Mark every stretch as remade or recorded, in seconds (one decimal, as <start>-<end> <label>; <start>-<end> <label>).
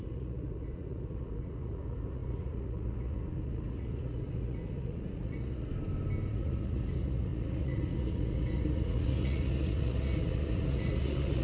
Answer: 0.0-5.7 remade; 5.7-6.3 recorded; 6.3-11.4 remade